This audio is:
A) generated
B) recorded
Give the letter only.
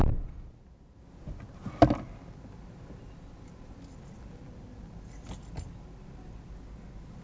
B